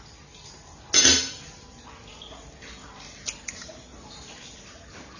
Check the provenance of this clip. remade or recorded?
recorded